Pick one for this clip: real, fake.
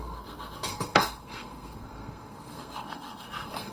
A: fake